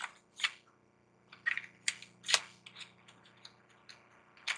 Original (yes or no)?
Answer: yes